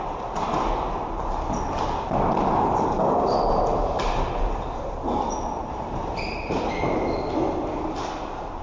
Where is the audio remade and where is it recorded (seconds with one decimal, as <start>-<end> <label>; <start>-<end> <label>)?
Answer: 0.0-3.7 recorded; 3.7-4.9 remade; 4.9-5.6 recorded; 5.6-6.1 remade; 6.1-8.6 recorded